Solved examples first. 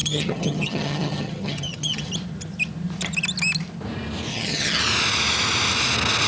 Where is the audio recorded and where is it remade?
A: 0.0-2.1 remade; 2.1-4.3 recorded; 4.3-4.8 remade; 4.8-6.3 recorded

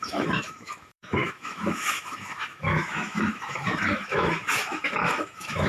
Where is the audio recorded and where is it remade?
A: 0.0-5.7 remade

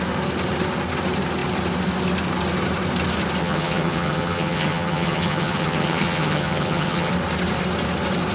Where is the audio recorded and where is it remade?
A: 0.0-3.4 recorded; 3.4-7.1 remade; 7.1-8.3 recorded

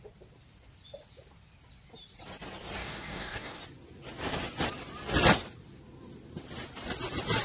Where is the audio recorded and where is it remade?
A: 0.0-2.8 recorded; 2.8-3.6 remade; 3.6-7.4 recorded

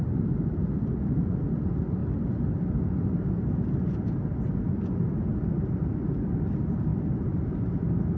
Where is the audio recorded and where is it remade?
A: 0.0-6.9 recorded; 6.9-8.2 remade

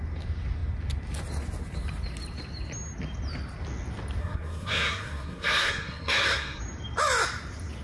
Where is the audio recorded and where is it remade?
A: 0.0-4.2 recorded; 4.2-6.6 remade; 6.6-7.8 recorded

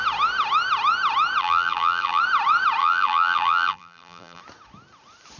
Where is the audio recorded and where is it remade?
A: 0.0-1.4 recorded; 1.4-2.2 remade; 2.2-2.8 recorded; 2.8-4.4 remade; 4.4-5.4 recorded